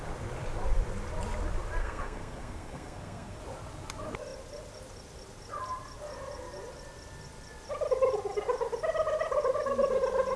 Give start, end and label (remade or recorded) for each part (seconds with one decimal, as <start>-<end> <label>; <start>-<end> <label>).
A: 0.0-1.8 recorded; 1.8-3.4 remade; 3.4-10.4 recorded